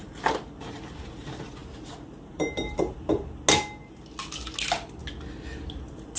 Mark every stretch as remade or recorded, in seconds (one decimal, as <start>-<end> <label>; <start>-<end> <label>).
0.0-1.6 recorded; 1.6-3.2 remade; 3.2-6.2 recorded